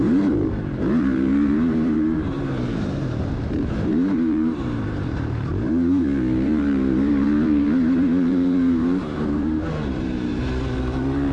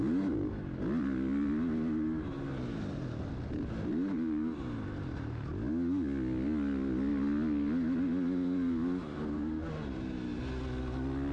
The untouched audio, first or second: second